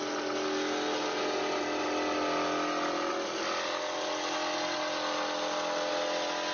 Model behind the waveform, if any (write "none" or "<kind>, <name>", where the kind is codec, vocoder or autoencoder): none